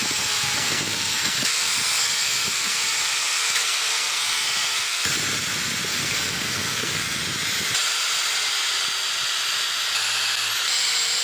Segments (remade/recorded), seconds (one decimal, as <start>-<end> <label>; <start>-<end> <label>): 0.0-5.1 remade; 5.1-5.9 recorded; 5.9-7.2 remade; 7.2-11.2 recorded